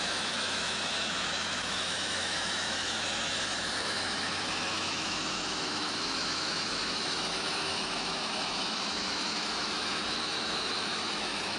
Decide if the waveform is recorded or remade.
remade